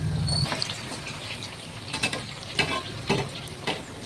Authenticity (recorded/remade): recorded